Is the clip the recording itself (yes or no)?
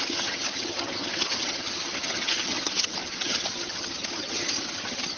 no